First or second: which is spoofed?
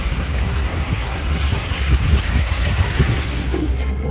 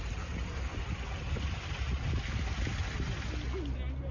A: first